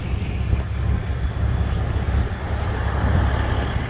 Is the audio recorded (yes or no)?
yes